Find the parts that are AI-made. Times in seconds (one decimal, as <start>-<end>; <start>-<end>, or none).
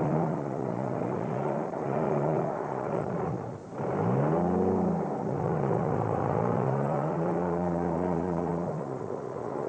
0.0-3.6; 5.2-9.7